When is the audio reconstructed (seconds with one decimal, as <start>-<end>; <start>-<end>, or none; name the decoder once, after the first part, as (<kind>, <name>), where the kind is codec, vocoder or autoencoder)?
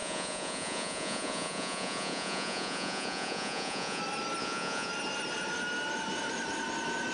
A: 0.0-4.0 (vocoder, Vocos); 4.4-4.9